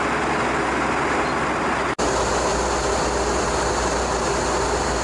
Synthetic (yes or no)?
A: no